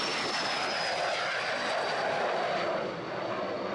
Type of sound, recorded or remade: recorded